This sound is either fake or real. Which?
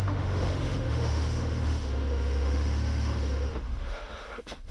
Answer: fake